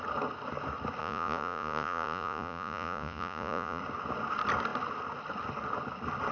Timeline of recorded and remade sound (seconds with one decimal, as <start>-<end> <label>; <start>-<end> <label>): 0.0-1.0 recorded; 1.0-3.8 remade; 3.8-6.3 recorded